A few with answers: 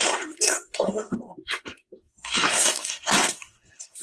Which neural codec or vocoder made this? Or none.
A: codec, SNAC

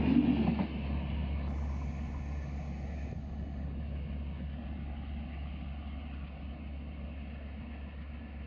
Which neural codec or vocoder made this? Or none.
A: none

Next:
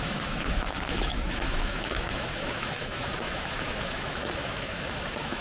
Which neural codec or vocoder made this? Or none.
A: autoencoder, DAC-VAE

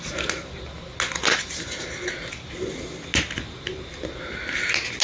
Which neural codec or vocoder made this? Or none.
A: none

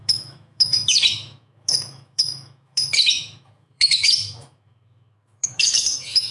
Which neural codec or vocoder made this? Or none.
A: autoencoder, DAC-VAE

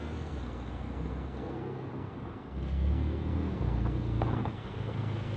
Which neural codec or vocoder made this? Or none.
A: codec, SNAC